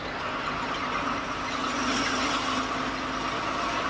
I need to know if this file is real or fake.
real